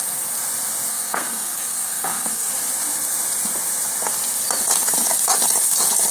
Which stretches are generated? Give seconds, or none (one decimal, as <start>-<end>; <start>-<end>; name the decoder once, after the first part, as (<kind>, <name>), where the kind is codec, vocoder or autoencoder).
0.9-2.5 (codec, SNAC)